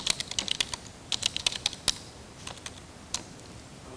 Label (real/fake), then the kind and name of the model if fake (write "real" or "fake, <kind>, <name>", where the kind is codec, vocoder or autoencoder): real